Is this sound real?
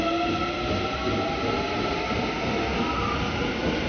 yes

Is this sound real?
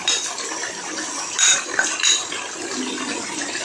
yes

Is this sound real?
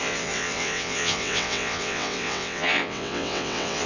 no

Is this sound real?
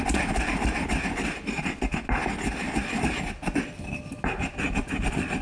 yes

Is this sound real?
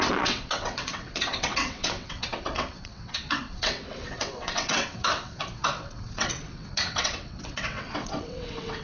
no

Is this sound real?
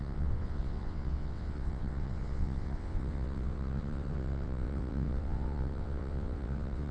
no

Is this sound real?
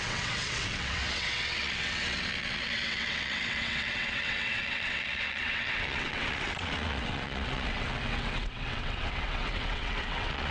no